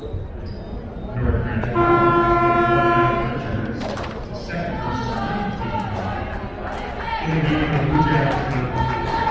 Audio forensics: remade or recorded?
recorded